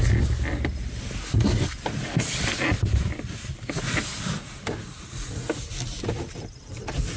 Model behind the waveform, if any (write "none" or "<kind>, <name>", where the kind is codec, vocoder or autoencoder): none